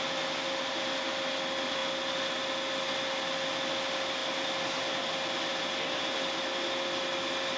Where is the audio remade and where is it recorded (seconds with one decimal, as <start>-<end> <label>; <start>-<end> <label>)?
0.0-7.6 recorded